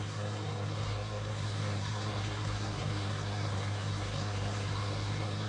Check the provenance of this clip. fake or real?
fake